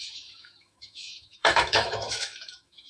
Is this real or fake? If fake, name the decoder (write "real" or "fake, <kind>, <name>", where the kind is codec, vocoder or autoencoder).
fake, autoencoder, DAC-VAE